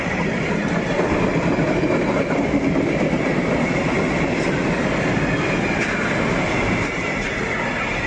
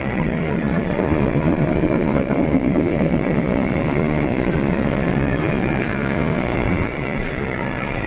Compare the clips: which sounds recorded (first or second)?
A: first